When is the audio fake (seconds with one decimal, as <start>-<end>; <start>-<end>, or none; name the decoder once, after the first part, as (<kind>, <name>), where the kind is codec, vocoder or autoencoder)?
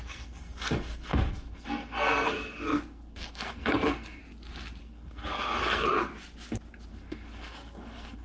0.0-4.2 (codec, SNAC); 4.8-6.1; 6.9-8.2